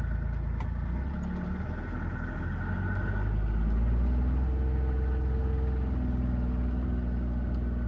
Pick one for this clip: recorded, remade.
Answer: recorded